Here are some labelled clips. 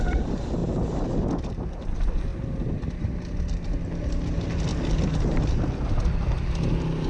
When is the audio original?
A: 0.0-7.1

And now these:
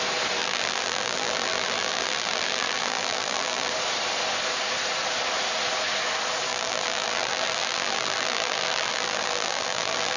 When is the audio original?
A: 0.0-0.4; 3.7-6.5

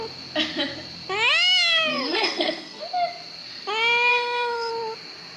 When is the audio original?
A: 0.0-1.9; 2.8-4.1; 4.7-5.4

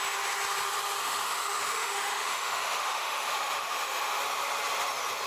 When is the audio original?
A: 0.0-1.0; 4.2-5.3

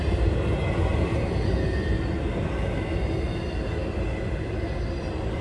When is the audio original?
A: 0.0-0.9; 2.5-5.4

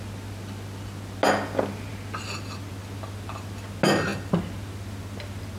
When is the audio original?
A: 0.0-5.6

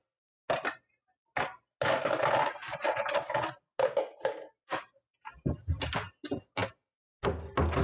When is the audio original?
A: 0.0-7.8